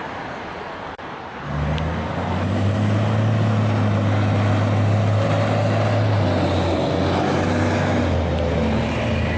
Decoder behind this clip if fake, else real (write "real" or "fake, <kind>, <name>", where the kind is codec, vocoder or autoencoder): real